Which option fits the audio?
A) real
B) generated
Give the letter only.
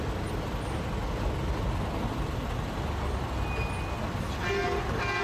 A